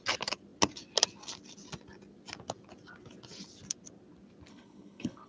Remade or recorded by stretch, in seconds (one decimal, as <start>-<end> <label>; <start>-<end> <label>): 0.0-4.5 recorded; 4.5-5.3 remade